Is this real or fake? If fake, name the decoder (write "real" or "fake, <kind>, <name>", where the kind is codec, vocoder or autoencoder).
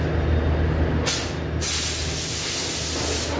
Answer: real